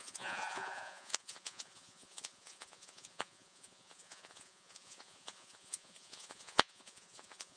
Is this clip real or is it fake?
fake